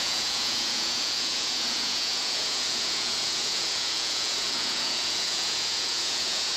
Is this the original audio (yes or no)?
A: no